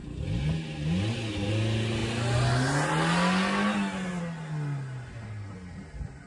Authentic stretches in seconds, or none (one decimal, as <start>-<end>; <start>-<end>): 0.0-6.3

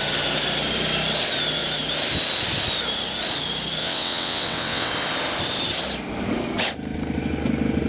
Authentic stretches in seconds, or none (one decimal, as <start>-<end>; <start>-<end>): 0.0-3.8; 4.9-7.9

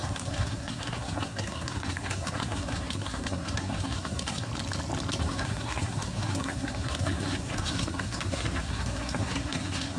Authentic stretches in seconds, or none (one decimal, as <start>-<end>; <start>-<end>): 4.5-5.2

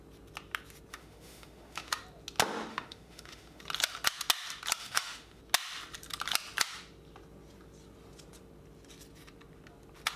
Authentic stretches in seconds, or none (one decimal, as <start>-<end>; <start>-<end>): 0.0-0.9; 1.9-2.7; 3.6-4.8; 5.4-10.2

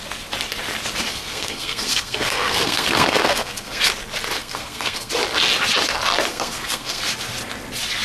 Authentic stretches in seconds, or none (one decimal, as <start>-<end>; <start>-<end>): 0.0-1.1; 3.8-4.4; 5.1-6.3; 7.0-8.0

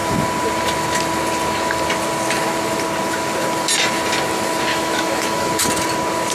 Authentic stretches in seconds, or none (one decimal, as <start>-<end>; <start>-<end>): 0.0-4.7; 5.5-6.3

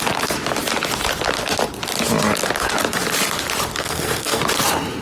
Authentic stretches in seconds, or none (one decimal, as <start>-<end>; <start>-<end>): 0.0-3.8; 4.4-5.0

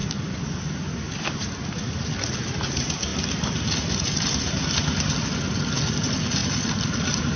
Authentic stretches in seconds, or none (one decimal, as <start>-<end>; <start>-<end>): 0.0-7.4